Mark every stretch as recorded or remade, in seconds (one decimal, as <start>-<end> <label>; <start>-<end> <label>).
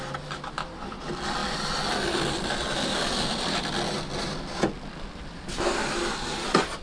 0.0-6.8 recorded